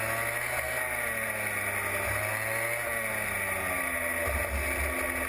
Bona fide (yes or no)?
yes